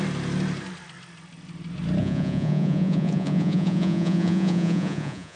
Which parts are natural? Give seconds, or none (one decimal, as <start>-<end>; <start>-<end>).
0.0-2.0